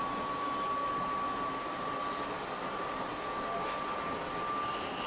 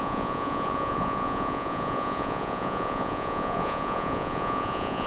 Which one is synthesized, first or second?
second